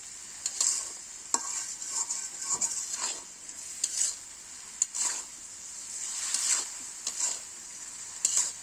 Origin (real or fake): real